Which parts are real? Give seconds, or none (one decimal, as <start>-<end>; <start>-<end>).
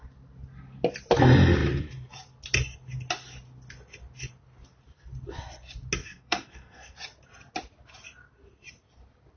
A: 0.0-6.0; 7.0-9.4